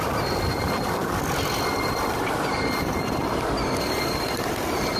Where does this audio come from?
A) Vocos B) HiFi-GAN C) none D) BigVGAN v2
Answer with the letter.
C